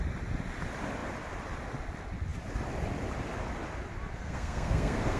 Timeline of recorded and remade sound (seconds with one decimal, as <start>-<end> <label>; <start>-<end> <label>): 0.0-4.2 recorded; 4.2-5.2 remade